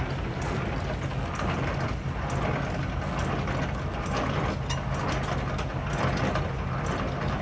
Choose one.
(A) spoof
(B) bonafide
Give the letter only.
B